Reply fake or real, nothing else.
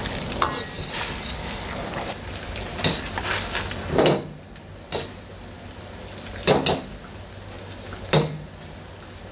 real